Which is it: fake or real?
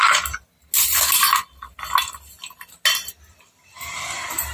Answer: real